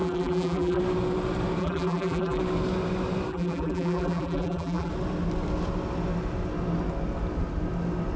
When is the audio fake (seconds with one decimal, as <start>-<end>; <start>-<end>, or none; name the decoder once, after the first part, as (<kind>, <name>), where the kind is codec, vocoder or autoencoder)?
0.0-0.8 (vocoder, BigVGAN v2); 1.6-2.4; 3.3-4.9